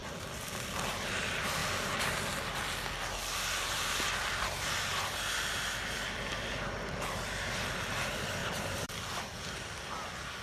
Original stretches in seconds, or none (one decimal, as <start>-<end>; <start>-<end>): 1.1-8.4; 9.2-10.4